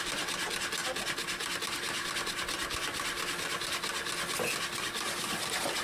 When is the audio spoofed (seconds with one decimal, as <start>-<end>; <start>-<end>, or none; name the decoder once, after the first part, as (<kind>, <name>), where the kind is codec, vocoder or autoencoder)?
none